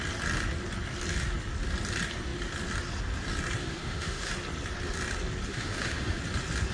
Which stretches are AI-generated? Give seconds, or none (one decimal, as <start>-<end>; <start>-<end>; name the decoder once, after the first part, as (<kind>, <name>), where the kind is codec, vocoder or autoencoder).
3.6-4.3 (autoencoder, DAC-VAE); 5.5-6.2